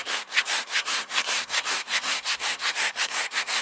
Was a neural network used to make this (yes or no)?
yes